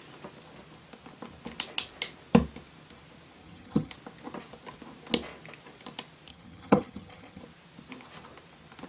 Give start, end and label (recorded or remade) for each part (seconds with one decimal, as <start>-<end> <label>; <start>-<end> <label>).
0.0-3.4 recorded; 3.4-3.9 remade; 3.9-6.3 recorded; 6.3-7.4 remade; 7.4-8.9 recorded